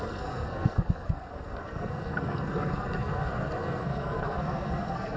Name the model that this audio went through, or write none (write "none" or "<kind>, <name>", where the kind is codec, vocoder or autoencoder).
codec, SNAC